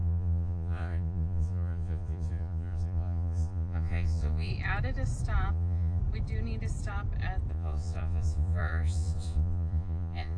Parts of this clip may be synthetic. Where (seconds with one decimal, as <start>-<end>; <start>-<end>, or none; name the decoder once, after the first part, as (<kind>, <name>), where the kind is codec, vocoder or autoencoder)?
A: 0.0-4.5 (vocoder, Vocos); 5.5-6.0; 7.5-10.4